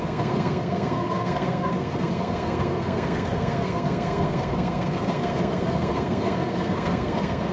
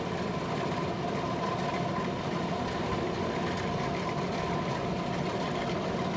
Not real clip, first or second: first